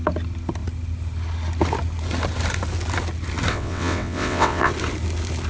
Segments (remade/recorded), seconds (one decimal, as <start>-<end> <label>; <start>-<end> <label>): 0.0-3.5 recorded; 3.5-4.7 remade; 4.7-5.5 recorded